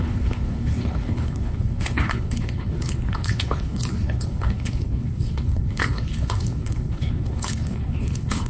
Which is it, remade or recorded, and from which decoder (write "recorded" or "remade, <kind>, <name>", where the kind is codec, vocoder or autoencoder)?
remade, codec, HILCodec